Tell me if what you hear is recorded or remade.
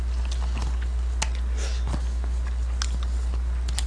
recorded